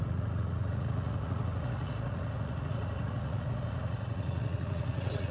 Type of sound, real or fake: fake